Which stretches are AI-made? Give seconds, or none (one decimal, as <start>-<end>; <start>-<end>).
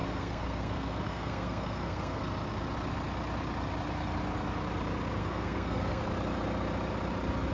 0.0-2.2; 5.2-6.0